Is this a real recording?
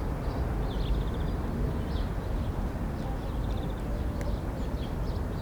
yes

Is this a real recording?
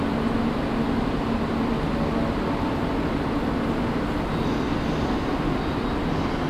yes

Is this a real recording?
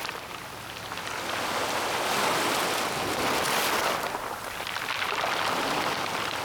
yes